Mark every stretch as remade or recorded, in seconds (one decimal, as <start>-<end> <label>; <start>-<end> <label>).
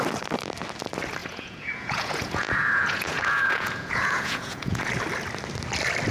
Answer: 0.0-1.2 recorded; 1.2-4.9 remade; 4.9-6.1 recorded